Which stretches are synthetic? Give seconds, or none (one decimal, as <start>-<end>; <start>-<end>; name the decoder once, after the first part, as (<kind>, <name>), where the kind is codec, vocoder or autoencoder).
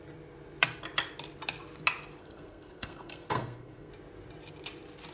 2.2-3.9 (codec, SNAC)